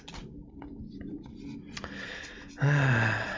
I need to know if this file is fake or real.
real